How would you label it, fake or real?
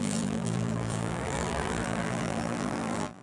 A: fake